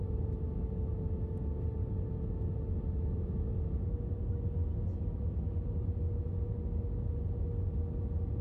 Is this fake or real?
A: real